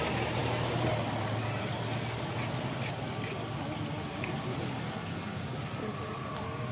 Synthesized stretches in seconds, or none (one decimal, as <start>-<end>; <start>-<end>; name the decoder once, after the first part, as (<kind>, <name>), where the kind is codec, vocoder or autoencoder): none